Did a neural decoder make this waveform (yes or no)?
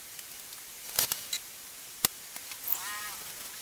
no